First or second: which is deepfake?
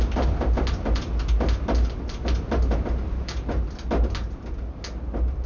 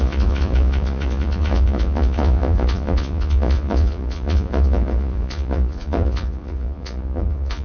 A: second